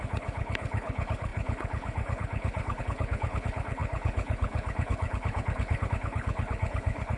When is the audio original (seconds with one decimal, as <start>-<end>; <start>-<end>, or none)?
none